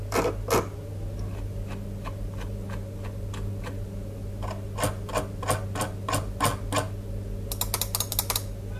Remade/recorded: recorded